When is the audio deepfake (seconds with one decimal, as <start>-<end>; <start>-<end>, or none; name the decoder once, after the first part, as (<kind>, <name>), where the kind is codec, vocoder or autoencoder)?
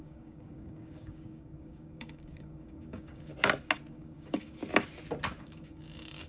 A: 0.0-3.3 (codec, DAC); 3.9-4.6; 5.4-6.3